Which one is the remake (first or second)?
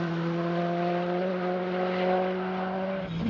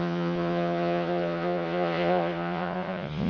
second